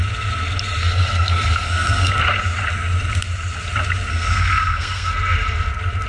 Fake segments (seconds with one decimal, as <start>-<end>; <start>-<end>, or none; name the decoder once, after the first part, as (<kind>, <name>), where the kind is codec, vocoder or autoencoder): 0.8-2.1 (codec, SNAC); 4.1-5.1